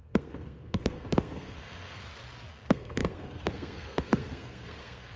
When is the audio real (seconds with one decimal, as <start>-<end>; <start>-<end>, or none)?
2.0-2.5